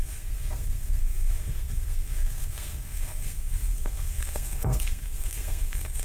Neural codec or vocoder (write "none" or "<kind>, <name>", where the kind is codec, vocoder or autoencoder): codec, SNAC